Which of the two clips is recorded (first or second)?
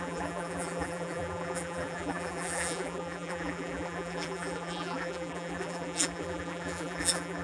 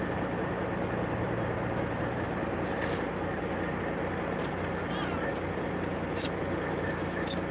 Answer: second